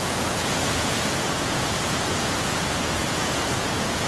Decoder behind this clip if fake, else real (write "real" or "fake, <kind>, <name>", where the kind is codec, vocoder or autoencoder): fake, vocoder, Vocos